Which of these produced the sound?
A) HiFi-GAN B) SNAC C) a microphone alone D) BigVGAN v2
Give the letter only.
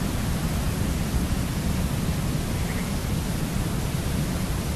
C